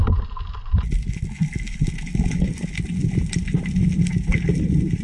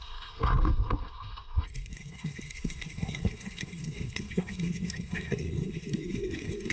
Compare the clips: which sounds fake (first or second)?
second